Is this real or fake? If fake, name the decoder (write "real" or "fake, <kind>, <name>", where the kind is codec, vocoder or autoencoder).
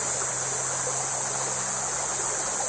real